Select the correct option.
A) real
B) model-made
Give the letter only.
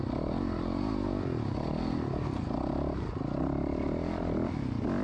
A